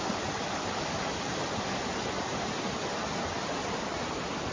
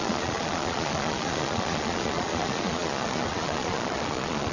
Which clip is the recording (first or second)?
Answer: first